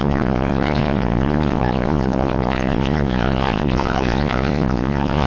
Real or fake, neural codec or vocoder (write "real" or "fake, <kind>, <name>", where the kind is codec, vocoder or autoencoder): fake, vocoder, Vocos